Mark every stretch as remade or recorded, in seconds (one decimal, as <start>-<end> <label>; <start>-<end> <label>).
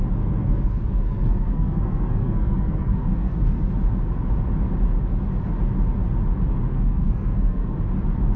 0.0-0.4 recorded; 0.4-3.6 remade; 3.6-6.7 recorded; 6.7-7.8 remade; 7.8-8.4 recorded